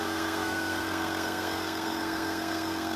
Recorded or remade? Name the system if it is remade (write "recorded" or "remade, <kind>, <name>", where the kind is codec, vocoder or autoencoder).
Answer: remade, codec, SNAC